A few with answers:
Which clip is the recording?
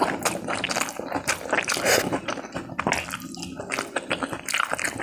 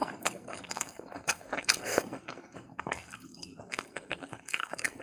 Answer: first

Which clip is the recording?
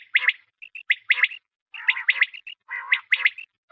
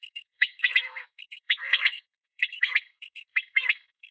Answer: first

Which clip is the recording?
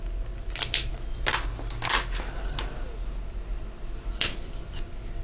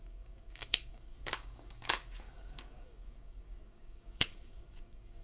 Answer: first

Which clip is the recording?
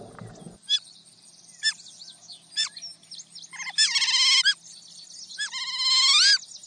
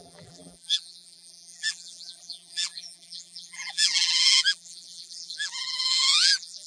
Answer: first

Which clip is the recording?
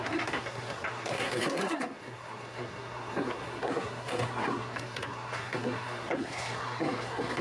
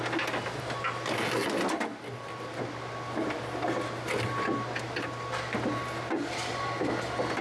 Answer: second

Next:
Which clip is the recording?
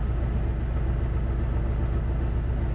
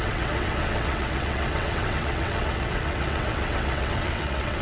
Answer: first